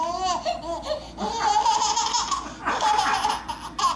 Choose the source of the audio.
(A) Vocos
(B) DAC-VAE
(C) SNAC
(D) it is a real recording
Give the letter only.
D